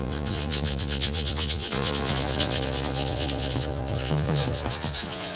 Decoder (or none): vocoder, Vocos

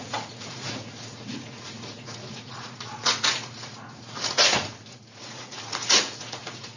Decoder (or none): vocoder, Vocos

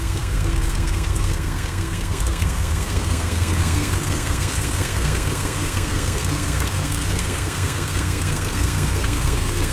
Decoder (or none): codec, SNAC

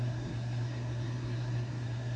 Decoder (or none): codec, SNAC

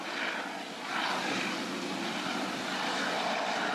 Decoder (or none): none